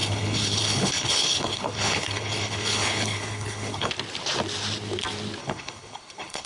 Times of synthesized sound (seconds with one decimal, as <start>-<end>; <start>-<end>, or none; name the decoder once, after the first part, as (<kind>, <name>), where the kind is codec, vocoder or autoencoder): 0.0-3.9 (codec, HILCodec); 5.4-6.5